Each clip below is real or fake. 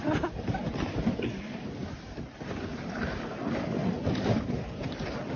real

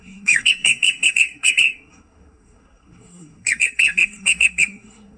fake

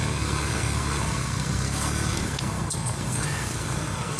fake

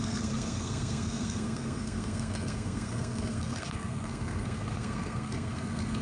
fake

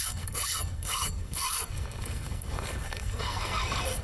fake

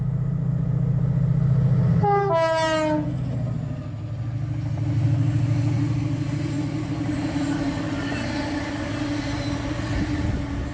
real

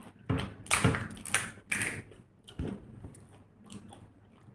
real